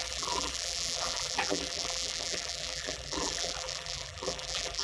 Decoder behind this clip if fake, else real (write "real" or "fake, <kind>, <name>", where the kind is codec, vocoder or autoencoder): fake, vocoder, BigVGAN v2